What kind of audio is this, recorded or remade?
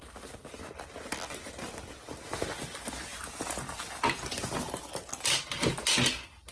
recorded